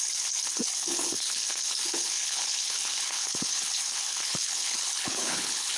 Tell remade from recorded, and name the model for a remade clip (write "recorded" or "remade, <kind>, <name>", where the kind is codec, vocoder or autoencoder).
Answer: remade, codec, HILCodec